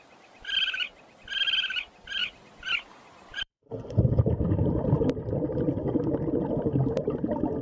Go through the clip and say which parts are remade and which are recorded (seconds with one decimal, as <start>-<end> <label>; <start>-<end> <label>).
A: 0.0-3.3 recorded; 3.3-5.2 remade; 5.2-7.6 recorded